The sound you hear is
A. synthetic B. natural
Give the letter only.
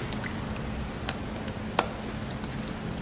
B